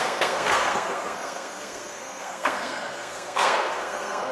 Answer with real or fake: fake